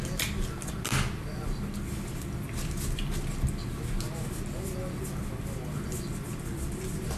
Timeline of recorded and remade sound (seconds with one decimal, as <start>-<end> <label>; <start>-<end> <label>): 0.0-7.2 recorded

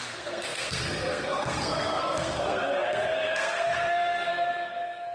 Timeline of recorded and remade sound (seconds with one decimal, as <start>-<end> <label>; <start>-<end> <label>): 0.0-5.1 remade

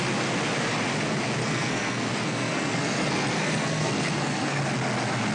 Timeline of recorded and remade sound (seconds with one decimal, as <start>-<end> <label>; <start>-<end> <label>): 0.0-1.4 recorded; 1.4-4.6 remade; 4.6-5.3 recorded

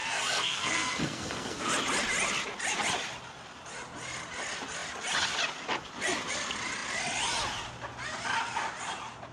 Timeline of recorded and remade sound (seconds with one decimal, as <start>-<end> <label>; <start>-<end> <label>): 0.0-1.7 remade; 1.7-9.3 recorded